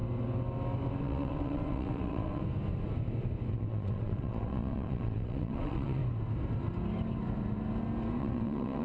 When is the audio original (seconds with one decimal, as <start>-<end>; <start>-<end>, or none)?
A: 0.0-1.0; 2.4-3.5; 6.0-8.2